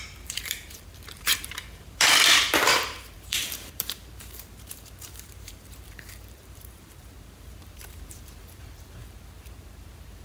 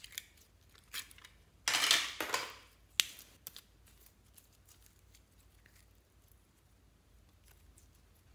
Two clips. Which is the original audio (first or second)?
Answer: second